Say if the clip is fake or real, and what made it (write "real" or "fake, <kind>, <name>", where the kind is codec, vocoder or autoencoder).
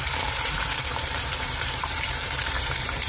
fake, vocoder, BigVGAN v2